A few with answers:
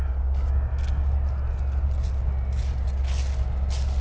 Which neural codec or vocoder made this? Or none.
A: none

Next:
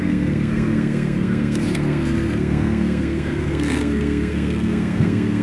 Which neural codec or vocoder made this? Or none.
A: codec, SNAC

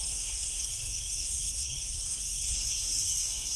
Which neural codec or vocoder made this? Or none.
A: codec, SNAC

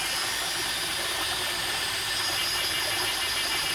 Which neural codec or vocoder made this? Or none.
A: none